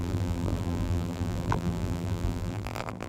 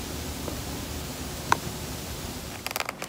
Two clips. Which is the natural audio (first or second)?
second